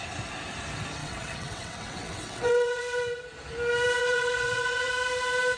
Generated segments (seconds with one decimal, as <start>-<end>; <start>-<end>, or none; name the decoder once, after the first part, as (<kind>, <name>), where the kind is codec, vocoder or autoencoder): 1.0-2.8 (vocoder, WaveNeXt); 4.0-4.9